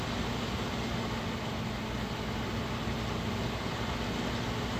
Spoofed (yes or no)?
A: no